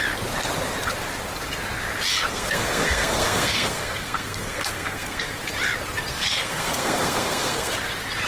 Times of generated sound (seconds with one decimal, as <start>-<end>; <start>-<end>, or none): 2.3-5.4; 6.1-7.7